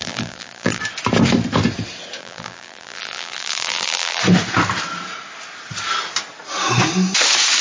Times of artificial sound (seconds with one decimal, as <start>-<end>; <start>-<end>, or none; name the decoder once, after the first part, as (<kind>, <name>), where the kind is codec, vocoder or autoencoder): 0.0-0.8 (vocoder, BigVGAN v2); 2.2-4.2